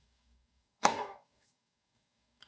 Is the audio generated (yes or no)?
yes